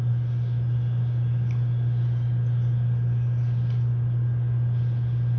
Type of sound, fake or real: real